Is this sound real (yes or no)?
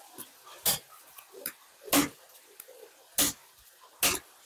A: yes